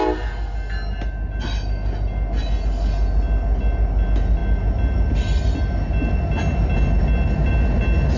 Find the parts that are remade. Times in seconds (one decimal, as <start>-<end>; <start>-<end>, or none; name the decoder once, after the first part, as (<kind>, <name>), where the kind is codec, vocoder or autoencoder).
none